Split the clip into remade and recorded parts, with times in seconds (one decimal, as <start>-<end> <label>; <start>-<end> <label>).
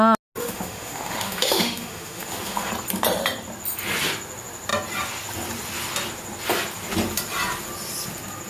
0.0-0.4 recorded; 0.4-2.7 remade; 2.7-8.5 recorded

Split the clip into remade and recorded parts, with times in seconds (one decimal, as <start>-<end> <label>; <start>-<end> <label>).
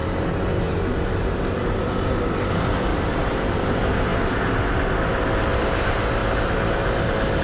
0.0-2.9 recorded; 2.9-3.6 remade; 3.6-4.1 recorded; 4.1-4.9 remade; 4.9-7.4 recorded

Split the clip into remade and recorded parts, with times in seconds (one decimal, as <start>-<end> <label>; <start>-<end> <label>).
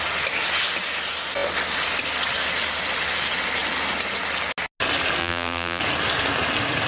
0.0-5.2 recorded; 5.2-5.8 remade; 5.8-6.9 recorded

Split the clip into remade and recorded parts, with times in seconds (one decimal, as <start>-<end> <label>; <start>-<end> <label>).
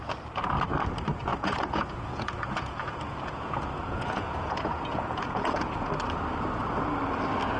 0.0-1.3 recorded; 1.3-5.9 remade; 5.9-7.6 recorded